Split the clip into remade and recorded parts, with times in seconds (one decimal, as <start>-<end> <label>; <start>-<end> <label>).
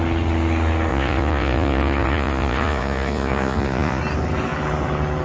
0.0-0.9 recorded; 0.9-4.0 remade; 4.0-5.2 recorded